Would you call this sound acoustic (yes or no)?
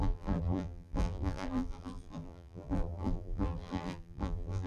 no